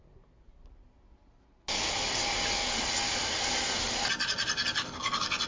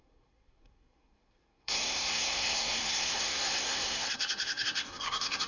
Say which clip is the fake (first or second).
second